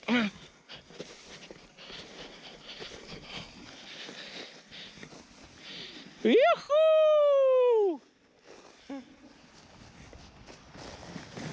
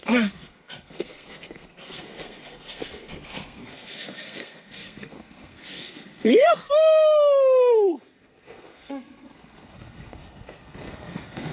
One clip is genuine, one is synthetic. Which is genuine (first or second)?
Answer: first